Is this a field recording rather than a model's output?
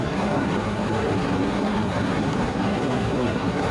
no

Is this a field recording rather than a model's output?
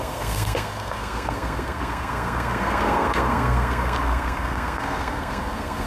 no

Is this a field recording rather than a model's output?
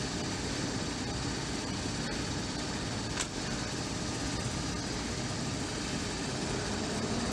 yes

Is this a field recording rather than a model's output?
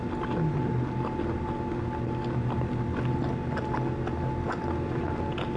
yes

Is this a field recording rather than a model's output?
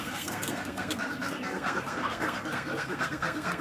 no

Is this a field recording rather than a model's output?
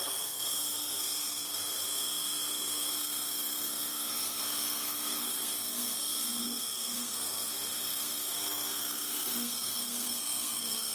no